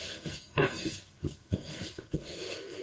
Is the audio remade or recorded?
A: remade